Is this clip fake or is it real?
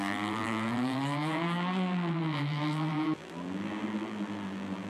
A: fake